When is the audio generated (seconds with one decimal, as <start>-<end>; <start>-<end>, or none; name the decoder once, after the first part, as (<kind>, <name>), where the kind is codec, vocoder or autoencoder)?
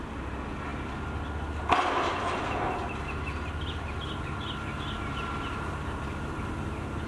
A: none